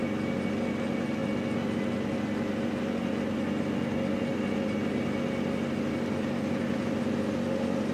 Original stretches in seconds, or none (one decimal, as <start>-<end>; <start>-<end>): 0.0-7.9